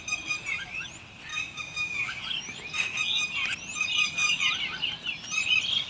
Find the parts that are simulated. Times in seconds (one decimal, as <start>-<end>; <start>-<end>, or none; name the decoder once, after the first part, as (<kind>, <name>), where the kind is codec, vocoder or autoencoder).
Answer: 1.3-2.2 (codec, DAC)